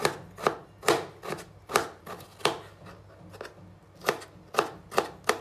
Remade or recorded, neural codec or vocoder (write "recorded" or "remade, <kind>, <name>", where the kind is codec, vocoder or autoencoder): recorded